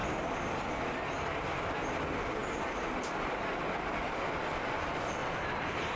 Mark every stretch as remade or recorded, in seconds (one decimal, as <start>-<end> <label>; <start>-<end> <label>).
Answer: 0.0-5.2 recorded; 5.2-6.0 remade

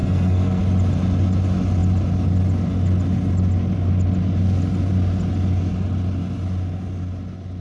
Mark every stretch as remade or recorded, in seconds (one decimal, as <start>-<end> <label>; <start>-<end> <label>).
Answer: 0.0-0.6 remade; 0.6-7.6 recorded

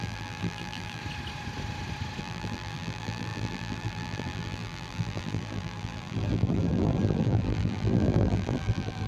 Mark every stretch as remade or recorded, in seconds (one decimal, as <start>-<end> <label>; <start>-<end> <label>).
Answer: 0.0-1.0 remade; 1.0-2.2 recorded; 2.2-9.1 remade

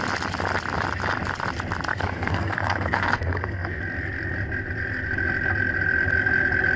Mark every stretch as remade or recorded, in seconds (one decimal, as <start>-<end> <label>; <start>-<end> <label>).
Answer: 0.0-1.9 recorded; 1.9-3.8 remade; 3.8-6.8 recorded

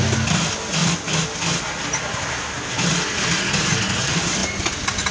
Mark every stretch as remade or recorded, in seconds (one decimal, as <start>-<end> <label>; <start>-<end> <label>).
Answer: 0.0-5.1 recorded

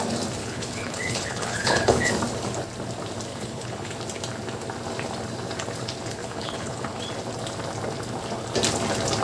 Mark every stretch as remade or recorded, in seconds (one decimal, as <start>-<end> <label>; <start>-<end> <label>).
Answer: 0.0-0.4 recorded; 0.4-2.1 remade; 2.1-3.3 recorded; 3.3-3.9 remade; 3.9-6.2 recorded; 6.2-7.0 remade; 7.0-9.2 recorded

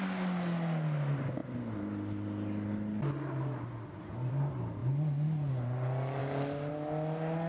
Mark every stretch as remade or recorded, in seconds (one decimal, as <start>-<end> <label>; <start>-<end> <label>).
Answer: 0.0-7.5 recorded